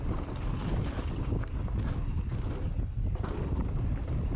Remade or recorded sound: recorded